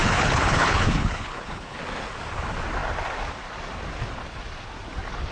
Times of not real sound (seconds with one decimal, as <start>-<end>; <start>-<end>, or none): 0.0-1.8